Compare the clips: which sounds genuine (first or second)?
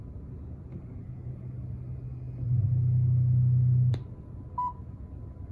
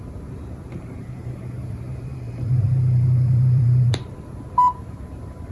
first